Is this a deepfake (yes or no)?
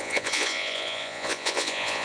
yes